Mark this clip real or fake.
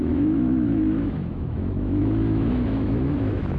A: fake